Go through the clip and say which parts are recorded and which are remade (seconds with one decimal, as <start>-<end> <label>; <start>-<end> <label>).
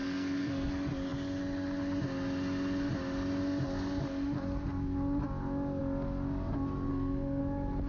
0.0-0.7 remade; 0.7-6.9 recorded; 6.9-7.4 remade; 7.4-7.9 recorded